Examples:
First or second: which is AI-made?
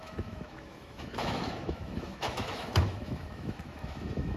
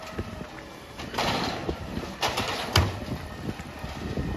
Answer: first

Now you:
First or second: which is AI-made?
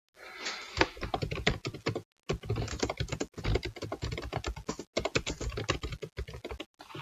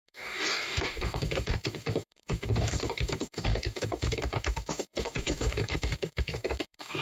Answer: second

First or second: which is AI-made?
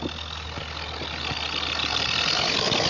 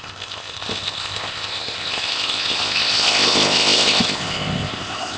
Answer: second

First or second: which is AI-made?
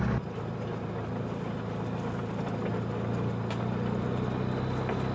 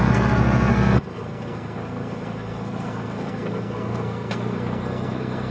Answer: second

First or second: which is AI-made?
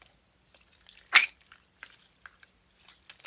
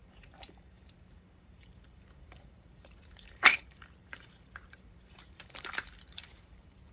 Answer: second